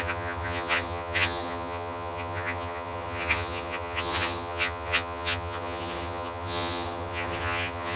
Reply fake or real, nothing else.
fake